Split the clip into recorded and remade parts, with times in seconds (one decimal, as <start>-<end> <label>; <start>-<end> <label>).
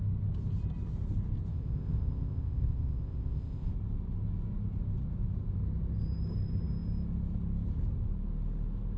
0.0-1.5 recorded; 1.5-3.7 remade; 3.7-9.0 recorded